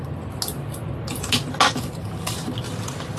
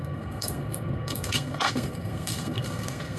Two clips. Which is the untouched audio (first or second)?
first